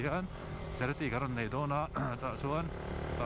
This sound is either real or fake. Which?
real